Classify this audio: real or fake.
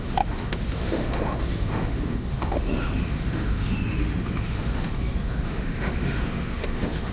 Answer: fake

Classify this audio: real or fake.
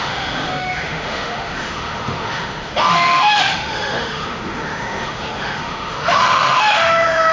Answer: fake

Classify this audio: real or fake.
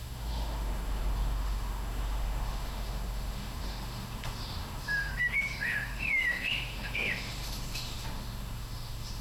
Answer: fake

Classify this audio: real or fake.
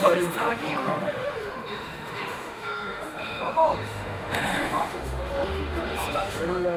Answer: fake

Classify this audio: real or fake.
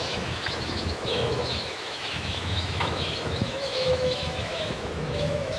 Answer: fake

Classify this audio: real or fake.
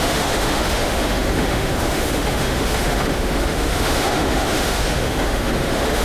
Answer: fake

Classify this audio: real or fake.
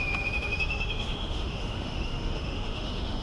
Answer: fake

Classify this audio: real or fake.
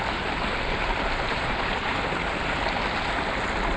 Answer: real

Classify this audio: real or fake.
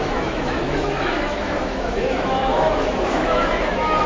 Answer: fake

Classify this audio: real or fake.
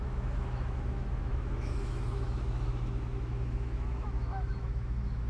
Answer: fake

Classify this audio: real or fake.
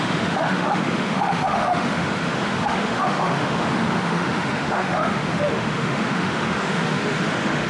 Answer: fake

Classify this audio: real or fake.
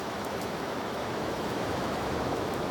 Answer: fake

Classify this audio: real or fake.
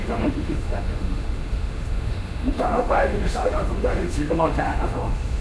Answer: fake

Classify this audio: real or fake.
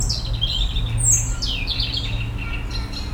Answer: real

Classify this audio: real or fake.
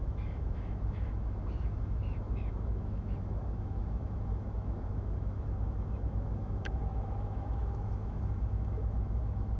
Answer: fake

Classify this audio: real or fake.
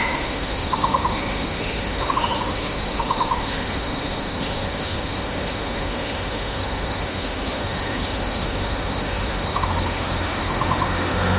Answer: fake